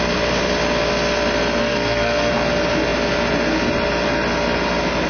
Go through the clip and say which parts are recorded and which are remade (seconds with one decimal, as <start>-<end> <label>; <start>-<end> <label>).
0.0-1.6 recorded; 1.6-2.3 remade; 2.3-5.1 recorded